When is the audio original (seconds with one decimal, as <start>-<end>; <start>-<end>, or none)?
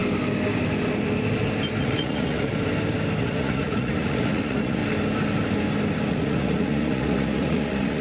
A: 0.0-1.8; 2.5-3.2; 4.8-6.1